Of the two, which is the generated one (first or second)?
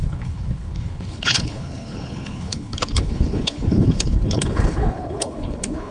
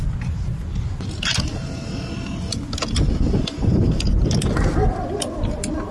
first